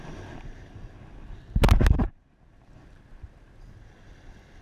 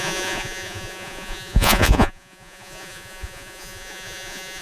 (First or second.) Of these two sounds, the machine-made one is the second